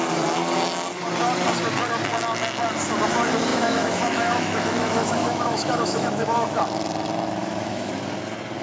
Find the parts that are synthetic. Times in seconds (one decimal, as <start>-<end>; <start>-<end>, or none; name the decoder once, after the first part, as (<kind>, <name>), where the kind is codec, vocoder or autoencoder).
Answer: 3.5-6.6 (autoencoder, DAC-VAE); 7.4-7.9